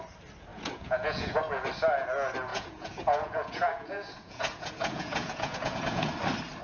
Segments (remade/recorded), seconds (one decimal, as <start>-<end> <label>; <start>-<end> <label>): 0.0-0.5 recorded; 0.5-1.4 remade; 1.4-2.5 recorded; 2.5-6.1 remade; 6.1-6.6 recorded